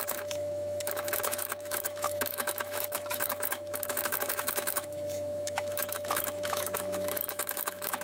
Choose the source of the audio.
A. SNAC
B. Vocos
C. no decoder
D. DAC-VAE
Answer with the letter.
D